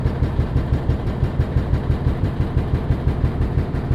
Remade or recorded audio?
remade